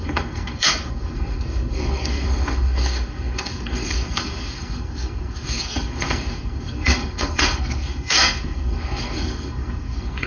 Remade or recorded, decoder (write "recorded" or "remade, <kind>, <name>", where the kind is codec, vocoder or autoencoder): remade, codec, SNAC